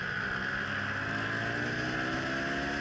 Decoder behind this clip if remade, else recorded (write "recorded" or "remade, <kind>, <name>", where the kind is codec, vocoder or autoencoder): recorded